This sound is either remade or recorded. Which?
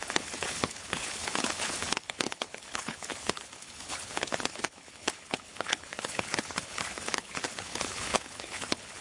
remade